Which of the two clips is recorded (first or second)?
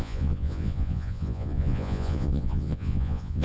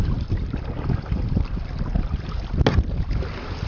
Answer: second